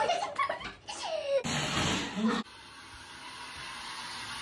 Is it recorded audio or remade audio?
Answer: recorded